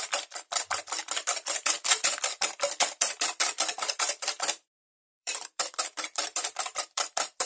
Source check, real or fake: fake